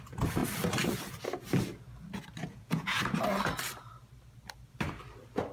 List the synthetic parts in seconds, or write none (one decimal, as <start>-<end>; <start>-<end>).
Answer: 2.5-3.0